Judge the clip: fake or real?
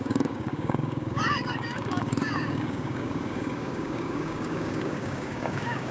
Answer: fake